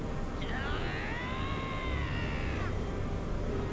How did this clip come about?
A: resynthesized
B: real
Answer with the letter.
B